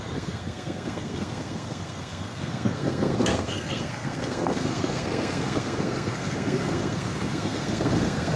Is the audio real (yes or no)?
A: no